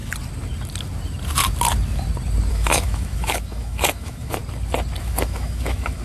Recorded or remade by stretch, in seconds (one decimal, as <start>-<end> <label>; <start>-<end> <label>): 0.0-2.5 recorded; 2.5-4.4 remade; 4.4-5.0 recorded; 5.0-6.0 remade